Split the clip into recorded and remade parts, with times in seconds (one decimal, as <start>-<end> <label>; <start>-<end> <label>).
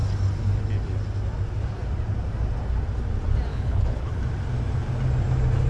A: 0.0-3.5 recorded; 3.5-4.2 remade; 4.2-5.7 recorded